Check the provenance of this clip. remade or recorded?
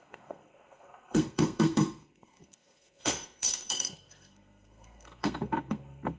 remade